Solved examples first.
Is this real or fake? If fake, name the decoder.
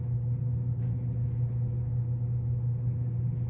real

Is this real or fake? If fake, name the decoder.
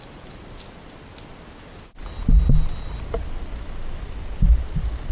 real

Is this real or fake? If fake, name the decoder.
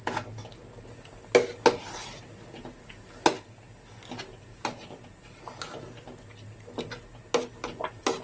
real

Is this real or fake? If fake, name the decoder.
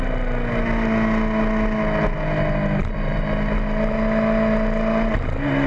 real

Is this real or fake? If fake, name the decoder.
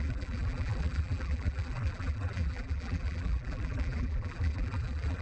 fake, vocoder, BigVGAN v2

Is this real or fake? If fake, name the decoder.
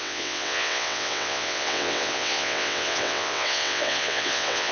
fake, vocoder, WaveNeXt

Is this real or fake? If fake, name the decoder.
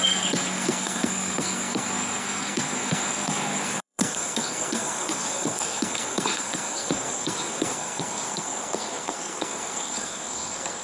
fake, codec, SNAC